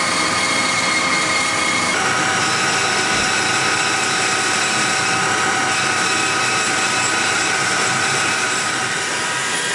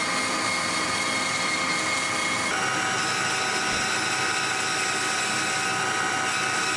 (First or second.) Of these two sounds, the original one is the second